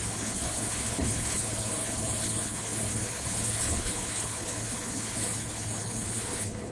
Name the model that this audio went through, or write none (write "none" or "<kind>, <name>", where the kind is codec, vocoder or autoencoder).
codec, HILCodec